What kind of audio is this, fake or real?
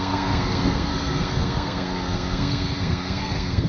fake